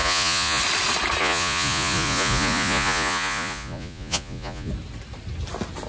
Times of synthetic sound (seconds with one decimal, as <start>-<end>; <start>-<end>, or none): 0.0-0.6; 1.2-4.7